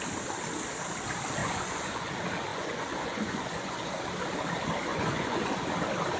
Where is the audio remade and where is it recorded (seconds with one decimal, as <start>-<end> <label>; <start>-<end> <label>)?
0.0-1.4 recorded; 1.4-2.1 remade; 2.1-2.5 recorded; 2.5-3.9 remade; 3.9-4.9 recorded; 4.9-5.5 remade; 5.5-6.2 recorded